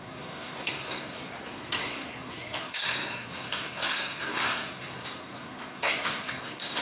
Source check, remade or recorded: remade